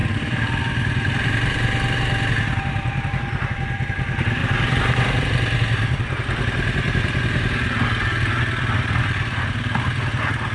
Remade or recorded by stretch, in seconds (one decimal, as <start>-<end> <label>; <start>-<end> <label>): 0.0-0.6 remade; 0.6-4.4 recorded; 4.4-5.2 remade; 5.2-10.5 recorded